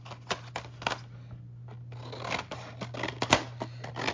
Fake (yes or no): no